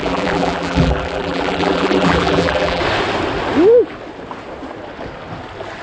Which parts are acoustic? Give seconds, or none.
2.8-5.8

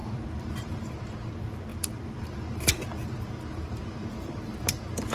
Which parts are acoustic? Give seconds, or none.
0.8-1.7

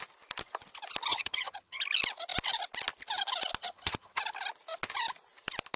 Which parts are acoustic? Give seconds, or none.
0.0-1.1; 1.8-3.6; 4.2-5.8

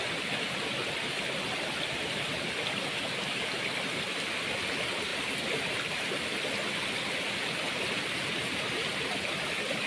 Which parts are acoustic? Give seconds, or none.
0.0-9.9

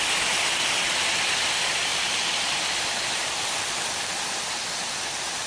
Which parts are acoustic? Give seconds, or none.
0.0-5.5

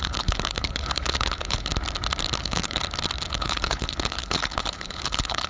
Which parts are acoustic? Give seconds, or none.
1.7-2.4; 2.8-3.3